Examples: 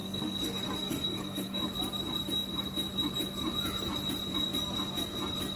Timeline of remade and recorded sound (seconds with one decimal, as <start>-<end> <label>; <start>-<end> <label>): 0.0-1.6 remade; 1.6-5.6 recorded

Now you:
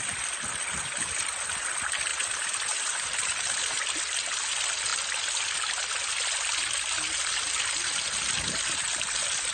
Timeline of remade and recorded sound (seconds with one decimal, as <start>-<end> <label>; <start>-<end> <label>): 0.0-2.1 recorded; 2.1-3.8 remade; 3.8-9.5 recorded

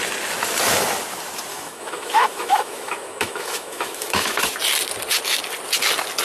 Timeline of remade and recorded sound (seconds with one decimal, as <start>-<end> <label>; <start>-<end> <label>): 0.0-1.5 recorded; 1.5-4.4 remade; 4.4-6.2 recorded